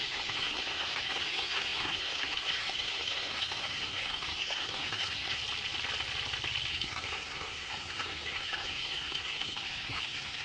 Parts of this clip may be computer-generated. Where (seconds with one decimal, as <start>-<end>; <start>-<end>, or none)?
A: 0.0-5.4; 6.7-10.4